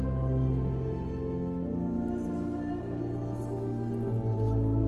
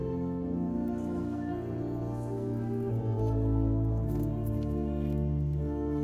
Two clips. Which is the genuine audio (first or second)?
first